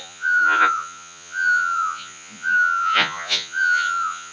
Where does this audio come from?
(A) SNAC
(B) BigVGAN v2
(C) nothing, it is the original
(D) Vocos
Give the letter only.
D